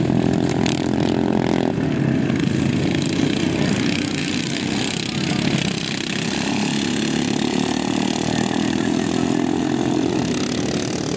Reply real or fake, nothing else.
real